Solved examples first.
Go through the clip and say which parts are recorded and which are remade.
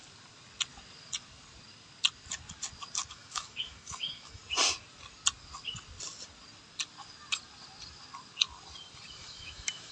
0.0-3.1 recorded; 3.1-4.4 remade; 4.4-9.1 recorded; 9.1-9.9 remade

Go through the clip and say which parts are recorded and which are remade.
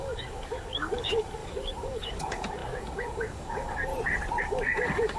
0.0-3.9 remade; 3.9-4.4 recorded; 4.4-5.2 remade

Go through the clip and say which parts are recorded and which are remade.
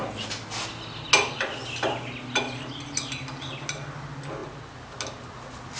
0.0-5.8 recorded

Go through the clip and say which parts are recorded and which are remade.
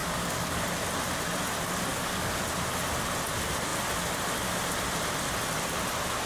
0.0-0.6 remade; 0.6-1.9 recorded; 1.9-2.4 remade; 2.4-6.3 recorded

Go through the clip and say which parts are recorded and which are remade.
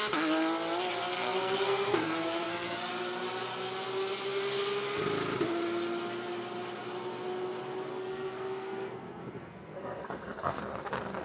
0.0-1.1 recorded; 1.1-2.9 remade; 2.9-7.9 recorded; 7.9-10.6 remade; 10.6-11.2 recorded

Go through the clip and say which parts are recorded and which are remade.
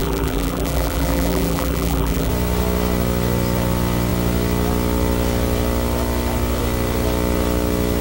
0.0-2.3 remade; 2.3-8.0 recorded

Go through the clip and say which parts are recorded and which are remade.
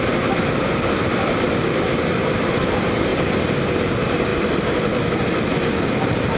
0.0-6.4 remade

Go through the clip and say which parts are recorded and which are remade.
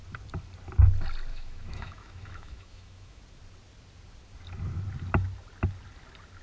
0.0-1.3 recorded; 1.3-3.2 remade; 3.2-6.4 recorded